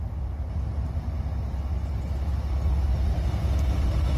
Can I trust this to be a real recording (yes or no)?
yes